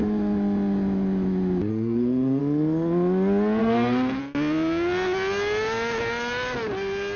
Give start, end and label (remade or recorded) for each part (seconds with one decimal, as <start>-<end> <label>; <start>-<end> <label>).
0.0-1.7 recorded; 1.7-2.4 remade; 2.4-3.6 recorded; 3.6-4.2 remade; 4.2-7.2 recorded